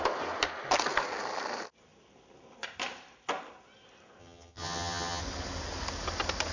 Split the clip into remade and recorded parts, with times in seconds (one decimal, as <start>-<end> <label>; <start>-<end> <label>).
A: 0.0-4.2 recorded; 4.2-5.2 remade; 5.2-6.5 recorded